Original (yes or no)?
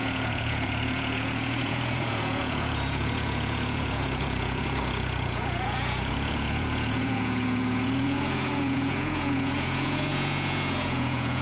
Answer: no